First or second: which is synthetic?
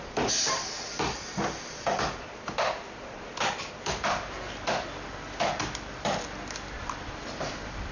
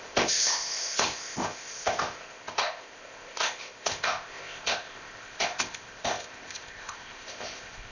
second